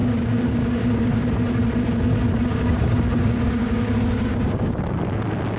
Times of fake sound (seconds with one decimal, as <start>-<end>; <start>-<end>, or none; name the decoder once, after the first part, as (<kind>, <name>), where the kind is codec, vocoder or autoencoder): 0.0-1.3 (codec, DAC); 2.5-4.8